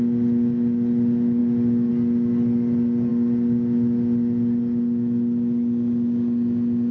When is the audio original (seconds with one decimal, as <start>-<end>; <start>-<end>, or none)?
0.0-6.9